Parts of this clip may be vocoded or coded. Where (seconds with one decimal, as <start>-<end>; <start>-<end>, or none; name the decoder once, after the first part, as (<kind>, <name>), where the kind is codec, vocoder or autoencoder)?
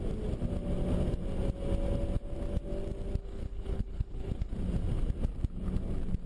3.2-4.5 (codec, HILCodec)